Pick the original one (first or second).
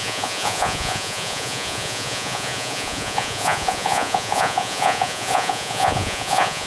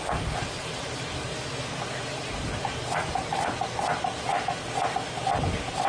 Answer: second